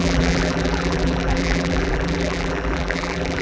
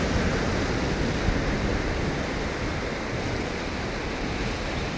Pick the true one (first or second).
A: second